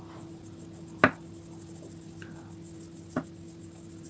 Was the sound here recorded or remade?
recorded